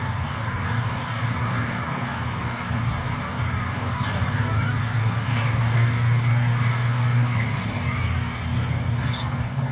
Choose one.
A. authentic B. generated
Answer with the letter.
B